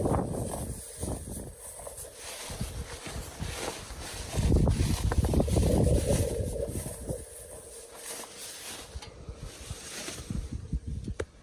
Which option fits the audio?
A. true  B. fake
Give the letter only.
A